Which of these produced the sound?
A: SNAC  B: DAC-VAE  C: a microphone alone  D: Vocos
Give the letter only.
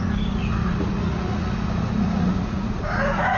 D